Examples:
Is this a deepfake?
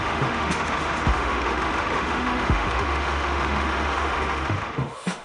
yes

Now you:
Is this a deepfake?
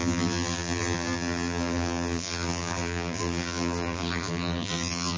yes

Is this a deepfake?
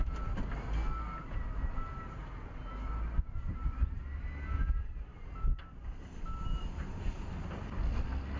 no